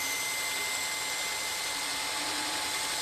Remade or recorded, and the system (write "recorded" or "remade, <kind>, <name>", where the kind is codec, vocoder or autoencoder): recorded